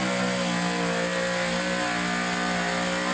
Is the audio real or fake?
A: real